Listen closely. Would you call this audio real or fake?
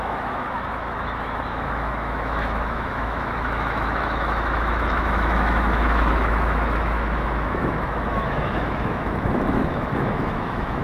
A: fake